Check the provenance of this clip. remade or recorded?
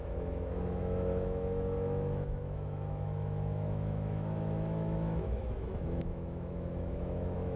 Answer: remade